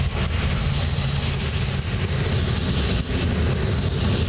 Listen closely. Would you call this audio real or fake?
real